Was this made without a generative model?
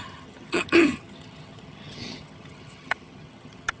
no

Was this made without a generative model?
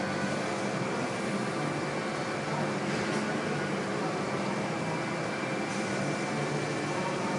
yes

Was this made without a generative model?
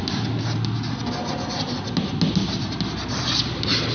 yes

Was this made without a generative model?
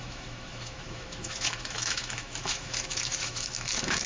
no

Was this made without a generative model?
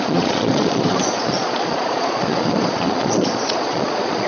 no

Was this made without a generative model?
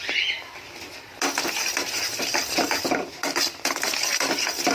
yes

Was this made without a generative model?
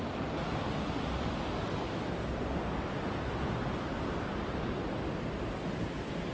yes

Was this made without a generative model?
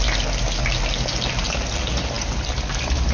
yes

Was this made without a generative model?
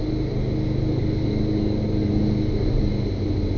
yes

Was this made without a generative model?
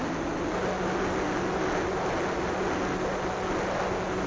yes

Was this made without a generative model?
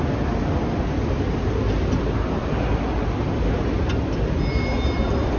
yes